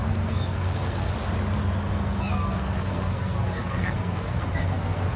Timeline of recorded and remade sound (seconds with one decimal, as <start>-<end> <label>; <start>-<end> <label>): 0.0-1.1 remade; 1.1-1.9 recorded; 1.9-5.2 remade